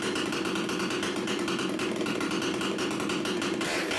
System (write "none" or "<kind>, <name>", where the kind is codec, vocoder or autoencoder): vocoder, BigVGAN v2